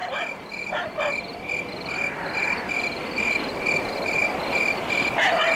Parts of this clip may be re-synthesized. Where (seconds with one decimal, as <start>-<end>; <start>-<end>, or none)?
none